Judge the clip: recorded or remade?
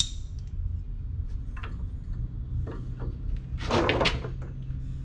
recorded